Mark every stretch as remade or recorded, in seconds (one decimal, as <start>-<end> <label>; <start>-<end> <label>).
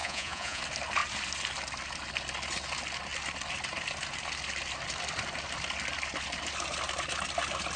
0.0-0.6 remade; 0.6-7.8 recorded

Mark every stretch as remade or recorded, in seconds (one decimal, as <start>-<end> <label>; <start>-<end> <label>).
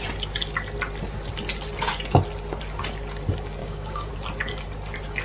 0.0-3.6 recorded; 3.6-4.1 remade; 4.1-5.2 recorded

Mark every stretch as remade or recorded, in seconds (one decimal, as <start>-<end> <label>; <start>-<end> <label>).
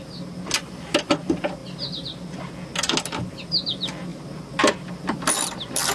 0.0-5.9 recorded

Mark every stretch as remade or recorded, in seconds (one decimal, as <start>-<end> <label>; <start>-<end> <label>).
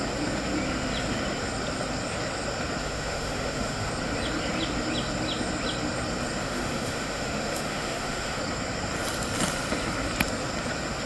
0.0-2.8 recorded; 2.8-3.9 remade; 3.9-6.4 recorded; 6.4-8.4 remade; 8.4-11.1 recorded